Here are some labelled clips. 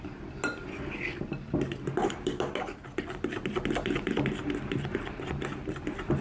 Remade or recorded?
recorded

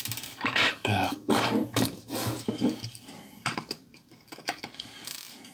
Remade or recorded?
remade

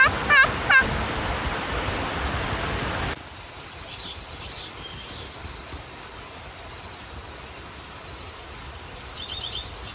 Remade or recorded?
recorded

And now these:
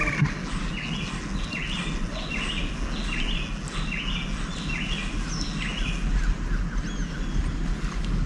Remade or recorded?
recorded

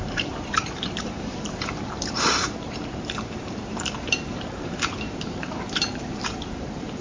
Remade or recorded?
remade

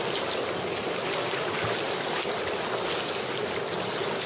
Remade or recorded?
recorded